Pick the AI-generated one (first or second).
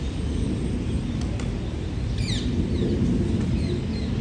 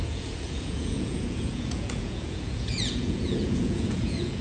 second